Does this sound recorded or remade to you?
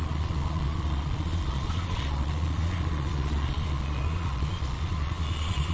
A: remade